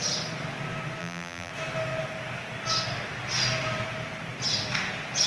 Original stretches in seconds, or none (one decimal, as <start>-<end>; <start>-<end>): 0.0-1.0; 1.5-5.3